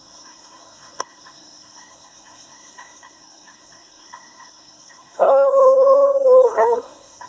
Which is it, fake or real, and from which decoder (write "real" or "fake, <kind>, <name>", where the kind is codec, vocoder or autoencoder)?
fake, codec, SNAC